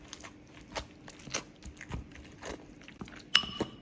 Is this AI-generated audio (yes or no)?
no